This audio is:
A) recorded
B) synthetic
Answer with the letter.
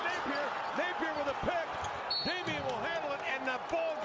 A